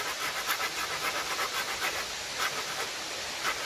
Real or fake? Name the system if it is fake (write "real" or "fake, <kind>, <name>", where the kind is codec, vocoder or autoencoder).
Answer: real